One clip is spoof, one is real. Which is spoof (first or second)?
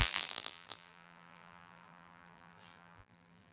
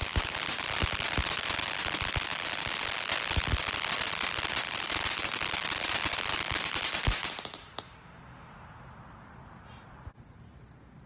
first